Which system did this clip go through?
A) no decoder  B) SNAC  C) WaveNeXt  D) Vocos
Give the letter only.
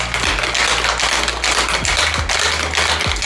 A